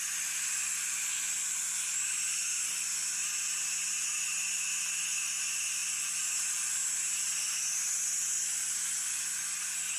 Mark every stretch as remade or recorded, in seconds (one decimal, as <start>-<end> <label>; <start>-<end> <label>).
0.0-10.0 recorded